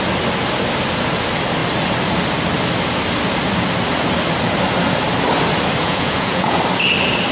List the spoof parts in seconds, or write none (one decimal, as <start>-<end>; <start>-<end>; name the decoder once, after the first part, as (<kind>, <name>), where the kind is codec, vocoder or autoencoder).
5.8-6.6 (vocoder, Vocos)